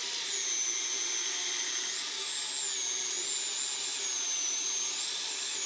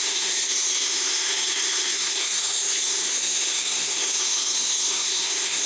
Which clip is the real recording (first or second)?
first